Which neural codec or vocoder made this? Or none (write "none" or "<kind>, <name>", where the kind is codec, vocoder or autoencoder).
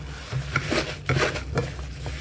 none